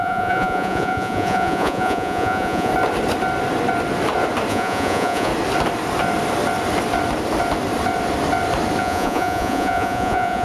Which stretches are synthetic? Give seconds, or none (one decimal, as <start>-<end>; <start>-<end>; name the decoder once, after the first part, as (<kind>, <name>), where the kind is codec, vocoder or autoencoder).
0.0-2.7 (vocoder, Vocos); 4.5-5.3; 8.8-10.4